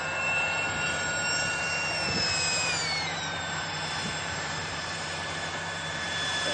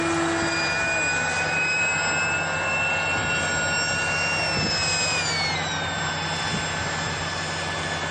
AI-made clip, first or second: first